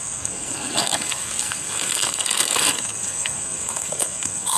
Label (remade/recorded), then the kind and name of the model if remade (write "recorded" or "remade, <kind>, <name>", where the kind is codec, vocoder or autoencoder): remade, codec, SNAC